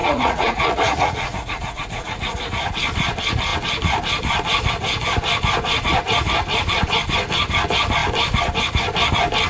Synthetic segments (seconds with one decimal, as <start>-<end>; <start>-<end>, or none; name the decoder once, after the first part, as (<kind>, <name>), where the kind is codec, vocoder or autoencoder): 0.0-2.5 (vocoder, Vocos)

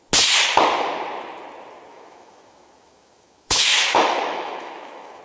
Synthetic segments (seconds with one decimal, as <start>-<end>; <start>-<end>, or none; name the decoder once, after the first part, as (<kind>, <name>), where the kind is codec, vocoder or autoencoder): 1.9-5.2 (autoencoder, DAC-VAE)

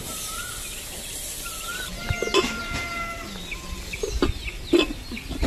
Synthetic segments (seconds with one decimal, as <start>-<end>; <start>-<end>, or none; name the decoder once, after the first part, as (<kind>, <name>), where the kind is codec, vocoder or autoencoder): none

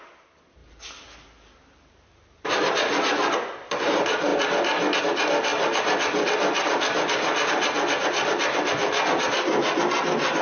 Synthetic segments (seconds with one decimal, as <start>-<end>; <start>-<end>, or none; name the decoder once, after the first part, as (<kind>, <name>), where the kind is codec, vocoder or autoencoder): 0.6-2.6 (vocoder, BigVGAN v2); 4.3-5.0; 8.8-9.8

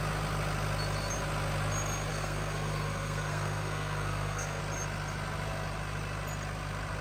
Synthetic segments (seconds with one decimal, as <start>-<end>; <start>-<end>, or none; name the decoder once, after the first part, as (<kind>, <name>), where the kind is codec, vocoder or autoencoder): 2.1-4.6 (codec, SNAC)

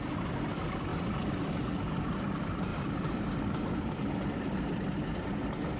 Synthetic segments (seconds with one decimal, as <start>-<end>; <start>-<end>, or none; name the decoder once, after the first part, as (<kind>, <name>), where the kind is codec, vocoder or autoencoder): 0.9-1.9 (vocoder, BigVGAN v2); 2.7-4.1

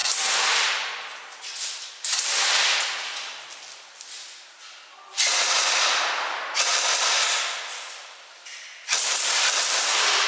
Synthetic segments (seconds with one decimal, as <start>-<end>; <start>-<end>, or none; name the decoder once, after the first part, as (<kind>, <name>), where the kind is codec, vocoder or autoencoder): 5.1-10.3 (vocoder, BigVGAN v2)